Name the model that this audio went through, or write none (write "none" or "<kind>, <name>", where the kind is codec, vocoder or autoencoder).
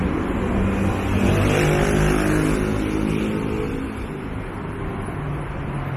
none